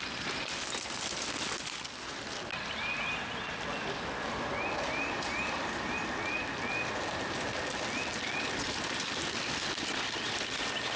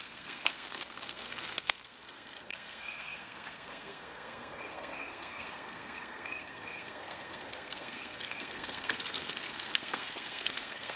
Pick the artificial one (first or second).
second